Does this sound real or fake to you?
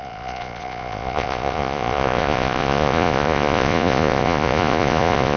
fake